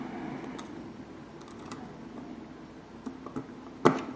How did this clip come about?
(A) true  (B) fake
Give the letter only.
A